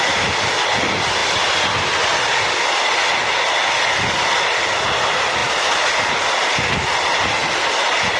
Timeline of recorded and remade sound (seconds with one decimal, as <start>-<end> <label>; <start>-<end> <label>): 0.0-8.2 recorded